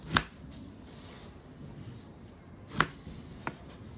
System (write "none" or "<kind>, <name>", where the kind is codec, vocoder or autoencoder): none